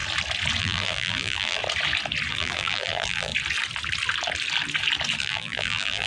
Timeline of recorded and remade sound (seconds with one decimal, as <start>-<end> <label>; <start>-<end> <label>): 0.0-0.6 recorded; 0.6-1.6 remade; 1.6-2.3 recorded; 2.3-3.3 remade; 3.3-5.2 recorded; 5.2-6.1 remade